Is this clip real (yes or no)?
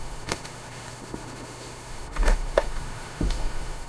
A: no